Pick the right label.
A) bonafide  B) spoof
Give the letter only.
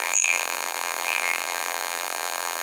B